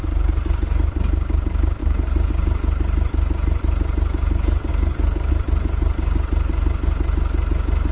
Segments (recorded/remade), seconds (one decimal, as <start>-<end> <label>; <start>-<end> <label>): 0.0-1.8 recorded; 1.8-2.3 remade; 2.3-4.7 recorded; 4.7-5.3 remade; 5.3-7.9 recorded